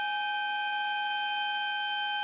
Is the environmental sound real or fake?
real